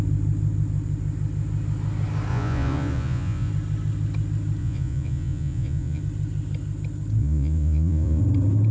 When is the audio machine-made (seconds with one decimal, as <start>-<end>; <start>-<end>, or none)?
2.3-3.5; 4.6-6.0; 7.2-8.2